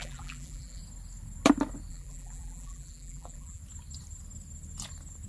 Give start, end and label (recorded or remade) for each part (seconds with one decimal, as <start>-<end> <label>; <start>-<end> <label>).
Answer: 0.0-0.8 remade; 0.8-1.9 recorded; 1.9-3.6 remade; 3.6-5.3 recorded